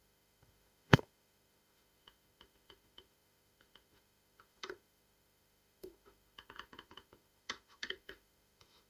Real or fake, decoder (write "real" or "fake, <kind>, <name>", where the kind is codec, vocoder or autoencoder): fake, autoencoder, DAC-VAE